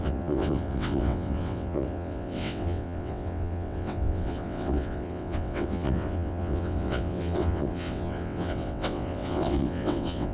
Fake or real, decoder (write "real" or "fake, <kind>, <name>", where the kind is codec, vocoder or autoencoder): fake, vocoder, WaveNeXt